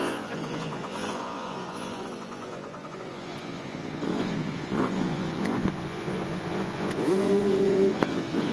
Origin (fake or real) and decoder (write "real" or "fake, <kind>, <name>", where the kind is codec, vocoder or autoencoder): fake, vocoder, Vocos